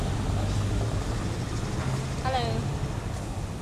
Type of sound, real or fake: real